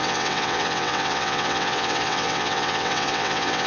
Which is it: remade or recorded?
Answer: remade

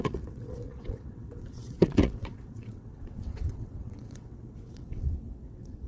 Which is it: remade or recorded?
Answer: remade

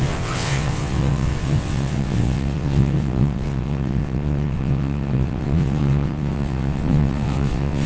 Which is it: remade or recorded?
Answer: remade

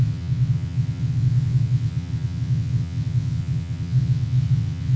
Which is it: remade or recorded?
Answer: remade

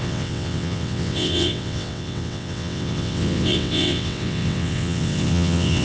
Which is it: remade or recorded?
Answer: remade